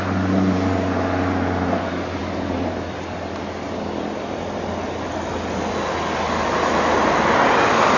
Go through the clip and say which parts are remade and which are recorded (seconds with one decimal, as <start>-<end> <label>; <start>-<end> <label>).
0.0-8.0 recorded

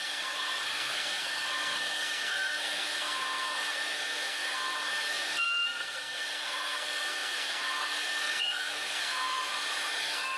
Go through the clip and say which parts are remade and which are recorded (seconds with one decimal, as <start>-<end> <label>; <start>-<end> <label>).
0.0-9.5 remade; 9.5-10.0 recorded; 10.0-10.4 remade

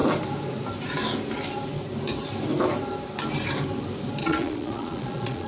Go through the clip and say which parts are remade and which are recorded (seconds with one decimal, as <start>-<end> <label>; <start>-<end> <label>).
0.0-4.2 recorded; 4.2-5.5 remade

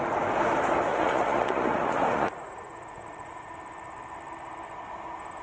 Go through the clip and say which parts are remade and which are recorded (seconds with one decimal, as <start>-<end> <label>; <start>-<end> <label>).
0.0-0.9 recorded; 0.9-3.5 remade; 3.5-5.4 recorded

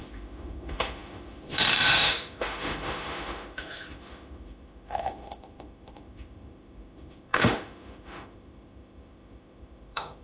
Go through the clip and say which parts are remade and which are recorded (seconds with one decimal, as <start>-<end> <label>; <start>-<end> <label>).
0.0-10.2 remade

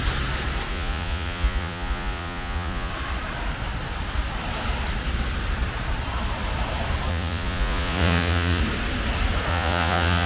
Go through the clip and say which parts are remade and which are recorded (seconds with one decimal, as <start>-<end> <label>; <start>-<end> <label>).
0.0-0.7 recorded; 0.7-2.9 remade; 2.9-7.1 recorded; 7.1-8.6 remade; 8.6-9.5 recorded; 9.5-10.3 remade

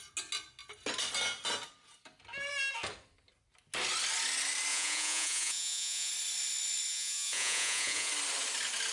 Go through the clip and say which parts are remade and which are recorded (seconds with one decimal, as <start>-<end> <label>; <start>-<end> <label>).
0.0-4.7 recorded; 4.7-6.1 remade; 6.1-6.9 recorded; 6.9-8.1 remade; 8.1-8.9 recorded

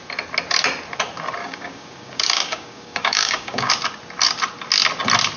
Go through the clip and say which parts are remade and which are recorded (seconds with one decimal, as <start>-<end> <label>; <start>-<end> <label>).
0.0-1.4 recorded; 1.4-3.7 remade; 3.7-5.4 recorded